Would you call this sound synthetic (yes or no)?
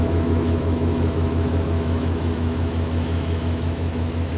yes